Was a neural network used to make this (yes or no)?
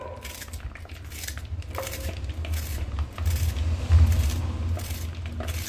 no